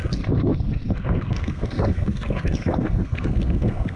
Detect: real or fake fake